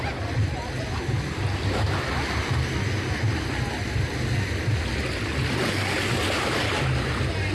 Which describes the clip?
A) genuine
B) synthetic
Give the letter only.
A